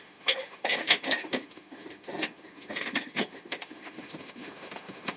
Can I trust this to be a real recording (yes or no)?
no